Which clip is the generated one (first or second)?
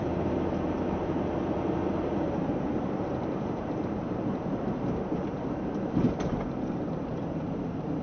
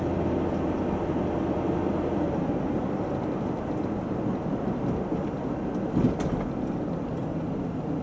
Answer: first